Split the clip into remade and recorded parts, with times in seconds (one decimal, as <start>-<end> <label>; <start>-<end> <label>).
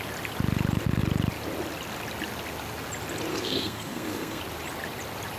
0.0-3.3 recorded; 3.3-4.4 remade; 4.4-5.4 recorded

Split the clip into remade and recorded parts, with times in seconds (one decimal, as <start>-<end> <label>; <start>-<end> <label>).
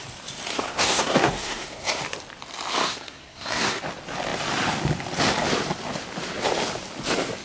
0.0-0.5 recorded; 0.5-2.0 remade; 2.0-2.8 recorded; 2.8-3.8 remade; 3.8-7.4 recorded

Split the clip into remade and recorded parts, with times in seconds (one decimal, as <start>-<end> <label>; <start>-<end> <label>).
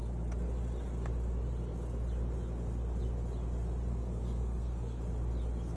0.0-3.9 recorded; 3.9-5.0 remade; 5.0-5.8 recorded